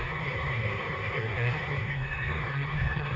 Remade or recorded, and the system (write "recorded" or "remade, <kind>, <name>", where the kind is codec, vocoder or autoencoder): remade, codec, SNAC